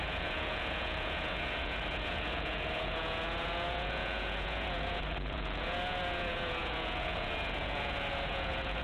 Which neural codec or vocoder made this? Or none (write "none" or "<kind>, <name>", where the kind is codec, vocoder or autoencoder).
vocoder, Vocos